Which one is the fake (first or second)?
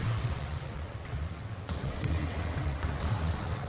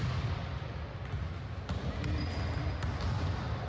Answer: first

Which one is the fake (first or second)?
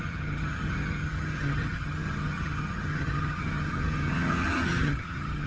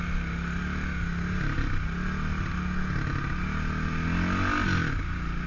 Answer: first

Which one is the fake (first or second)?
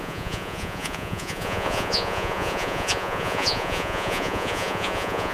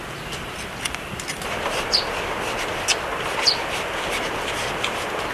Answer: first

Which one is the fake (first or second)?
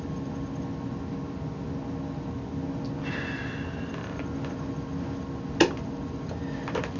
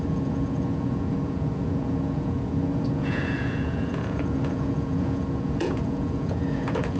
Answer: second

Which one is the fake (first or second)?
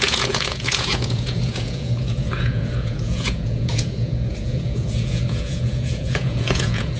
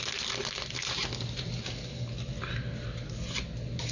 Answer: first